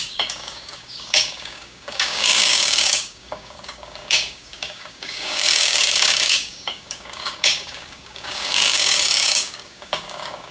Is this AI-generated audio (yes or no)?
yes